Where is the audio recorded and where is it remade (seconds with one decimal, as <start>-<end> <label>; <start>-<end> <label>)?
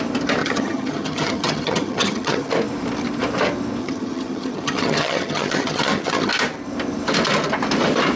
0.0-0.4 recorded; 0.4-2.5 remade; 2.5-3.8 recorded; 3.8-6.3 remade; 6.3-8.2 recorded